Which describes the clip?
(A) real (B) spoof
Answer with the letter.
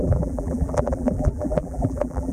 B